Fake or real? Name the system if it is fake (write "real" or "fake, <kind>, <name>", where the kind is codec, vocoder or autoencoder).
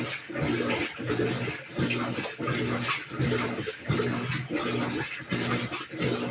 real